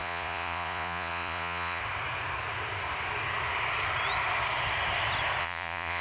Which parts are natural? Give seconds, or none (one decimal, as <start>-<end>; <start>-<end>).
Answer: 1.8-5.4